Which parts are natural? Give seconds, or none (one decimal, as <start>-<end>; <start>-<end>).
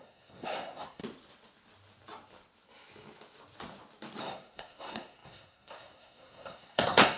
1.0-4.2